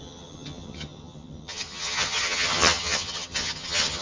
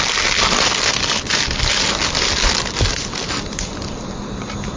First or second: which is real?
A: second